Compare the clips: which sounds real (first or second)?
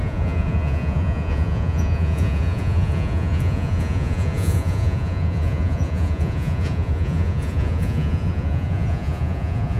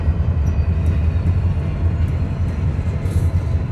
second